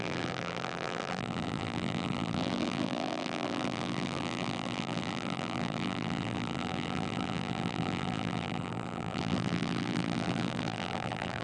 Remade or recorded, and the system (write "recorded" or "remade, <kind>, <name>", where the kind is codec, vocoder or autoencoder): remade, vocoder, BigVGAN v2